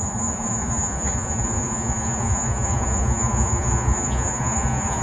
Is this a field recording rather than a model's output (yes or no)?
no